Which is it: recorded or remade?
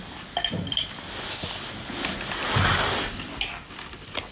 recorded